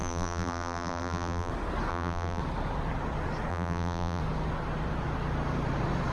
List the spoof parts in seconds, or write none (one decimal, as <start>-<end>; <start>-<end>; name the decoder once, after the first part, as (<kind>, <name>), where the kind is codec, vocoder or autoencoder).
0.0-1.5 (vocoder, BigVGAN v2); 1.9-2.4; 3.5-4.2